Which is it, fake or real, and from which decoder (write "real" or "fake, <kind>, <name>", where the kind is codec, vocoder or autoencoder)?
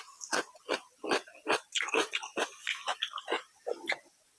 real